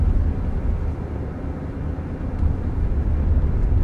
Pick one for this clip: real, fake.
real